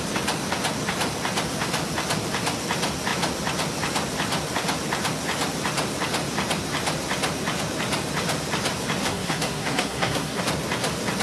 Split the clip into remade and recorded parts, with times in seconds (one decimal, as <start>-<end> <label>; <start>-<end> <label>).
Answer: 0.0-9.0 recorded; 9.0-10.4 remade; 10.4-11.2 recorded